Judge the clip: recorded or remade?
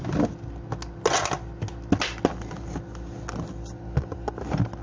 recorded